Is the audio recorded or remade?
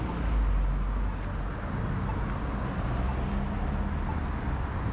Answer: recorded